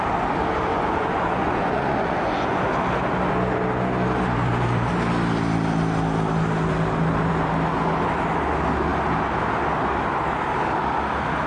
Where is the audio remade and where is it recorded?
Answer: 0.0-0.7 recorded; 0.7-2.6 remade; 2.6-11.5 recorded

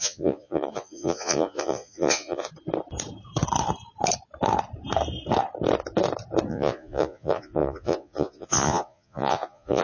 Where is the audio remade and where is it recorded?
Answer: 0.0-2.5 remade; 2.5-6.5 recorded; 6.5-9.8 remade

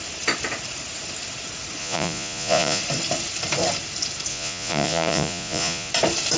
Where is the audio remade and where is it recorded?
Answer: 0.0-1.8 recorded; 1.8-2.8 remade; 2.8-4.3 recorded; 4.3-5.9 remade; 5.9-6.4 recorded

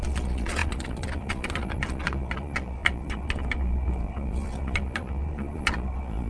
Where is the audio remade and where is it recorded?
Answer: 0.0-6.3 remade

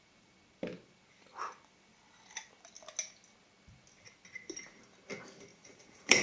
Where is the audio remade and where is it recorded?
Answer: 0.0-5.5 recorded; 5.5-6.2 remade